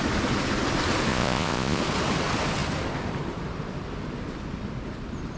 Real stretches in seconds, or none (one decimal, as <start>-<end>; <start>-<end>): 0.0-1.1; 1.8-5.4